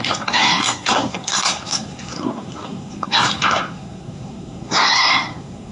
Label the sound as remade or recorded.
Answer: remade